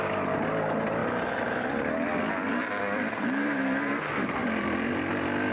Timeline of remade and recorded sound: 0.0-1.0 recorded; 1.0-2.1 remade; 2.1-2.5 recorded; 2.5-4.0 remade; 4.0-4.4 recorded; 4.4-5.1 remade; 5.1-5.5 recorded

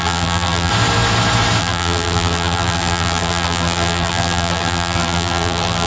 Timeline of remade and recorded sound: 0.0-0.7 remade; 0.7-1.6 recorded; 1.6-5.9 remade

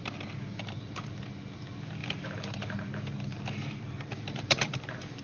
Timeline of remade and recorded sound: 0.0-0.5 recorded; 0.5-1.2 remade; 1.2-2.0 recorded; 2.0-5.2 remade

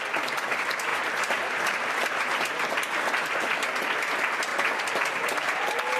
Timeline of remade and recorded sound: 0.0-0.9 recorded; 0.9-2.7 remade; 2.7-6.0 recorded

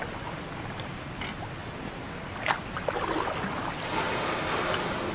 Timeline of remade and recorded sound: 0.0-5.1 recorded